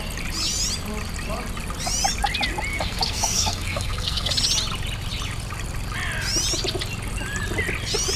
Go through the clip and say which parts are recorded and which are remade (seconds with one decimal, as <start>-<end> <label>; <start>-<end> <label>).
0.0-2.7 recorded; 2.7-4.3 remade; 4.3-8.2 recorded